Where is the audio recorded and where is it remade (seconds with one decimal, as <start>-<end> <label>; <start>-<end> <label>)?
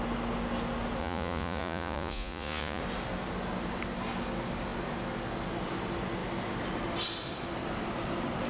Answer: 0.0-1.0 recorded; 1.0-2.8 remade; 2.8-8.5 recorded